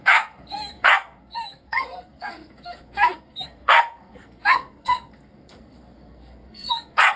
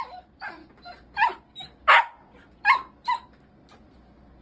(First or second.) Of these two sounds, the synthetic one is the first